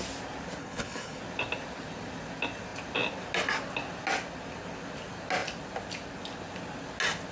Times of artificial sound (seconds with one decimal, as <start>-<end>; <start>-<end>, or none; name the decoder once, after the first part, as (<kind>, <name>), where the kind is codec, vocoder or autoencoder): 0.6-1.2 (codec, HILCodec)